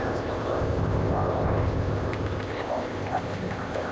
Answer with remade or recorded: remade